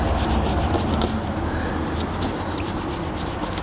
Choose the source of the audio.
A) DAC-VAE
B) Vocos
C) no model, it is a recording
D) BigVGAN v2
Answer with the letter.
C